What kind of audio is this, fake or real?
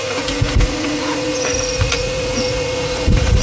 fake